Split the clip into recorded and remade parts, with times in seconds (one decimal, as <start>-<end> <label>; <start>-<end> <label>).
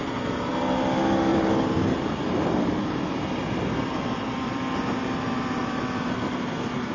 0.0-0.5 remade; 0.5-1.3 recorded; 1.3-4.6 remade; 4.6-6.9 recorded